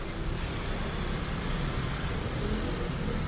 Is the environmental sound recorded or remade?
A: recorded